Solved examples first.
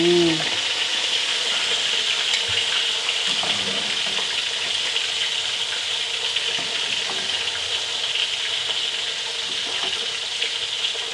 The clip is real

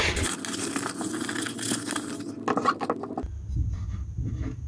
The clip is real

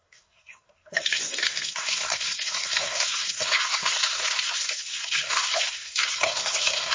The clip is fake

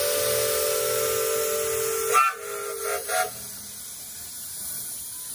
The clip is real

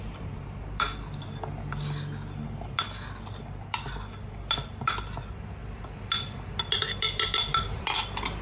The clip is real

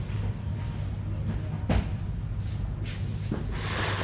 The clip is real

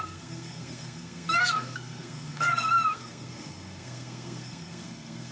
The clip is fake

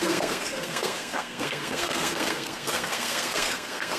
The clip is fake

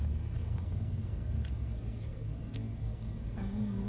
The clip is fake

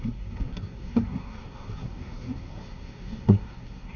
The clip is fake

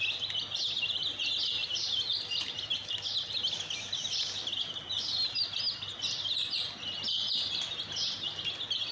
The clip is real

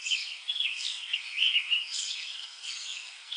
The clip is fake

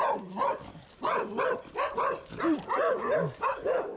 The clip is real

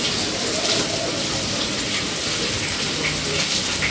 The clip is real